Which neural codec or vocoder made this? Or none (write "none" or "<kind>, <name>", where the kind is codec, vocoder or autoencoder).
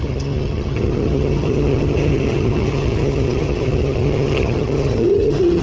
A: vocoder, HiFi-GAN